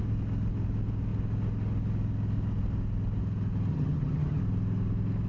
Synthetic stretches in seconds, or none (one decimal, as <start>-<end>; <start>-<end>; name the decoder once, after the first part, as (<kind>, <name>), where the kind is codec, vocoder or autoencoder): 3.7-4.4 (vocoder, HiFi-GAN)